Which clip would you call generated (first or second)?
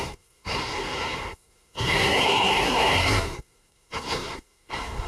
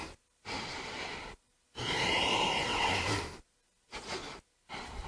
first